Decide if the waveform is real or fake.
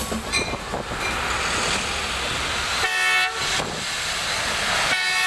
real